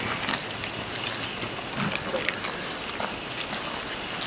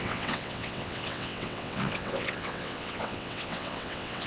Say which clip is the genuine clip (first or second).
first